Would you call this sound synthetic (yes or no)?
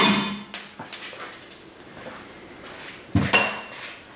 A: no